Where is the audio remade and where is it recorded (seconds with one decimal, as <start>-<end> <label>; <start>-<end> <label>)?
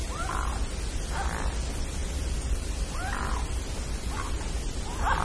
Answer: 0.0-5.2 recorded